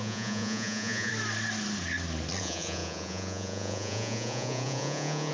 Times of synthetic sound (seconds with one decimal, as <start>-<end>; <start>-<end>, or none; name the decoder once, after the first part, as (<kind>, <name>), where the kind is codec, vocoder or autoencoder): 0.0-1.1 (vocoder, Vocos); 2.4-5.3